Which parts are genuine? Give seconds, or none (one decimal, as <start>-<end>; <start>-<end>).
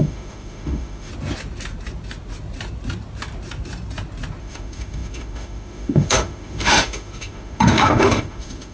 1.1-4.4